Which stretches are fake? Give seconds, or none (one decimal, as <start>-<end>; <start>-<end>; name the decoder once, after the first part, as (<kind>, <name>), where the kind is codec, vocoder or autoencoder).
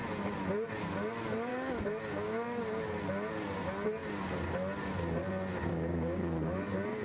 1.5-2.8 (codec, DAC); 5.7-6.2